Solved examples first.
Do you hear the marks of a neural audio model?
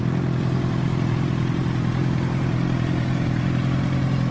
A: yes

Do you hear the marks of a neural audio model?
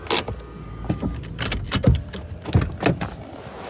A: no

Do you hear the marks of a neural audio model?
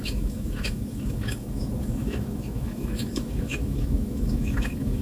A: yes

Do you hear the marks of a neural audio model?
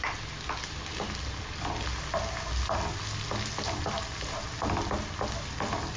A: no